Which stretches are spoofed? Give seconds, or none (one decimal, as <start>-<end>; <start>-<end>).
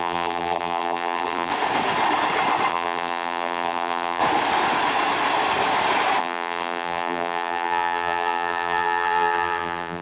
0.0-1.5; 2.7-4.2; 6.2-10.0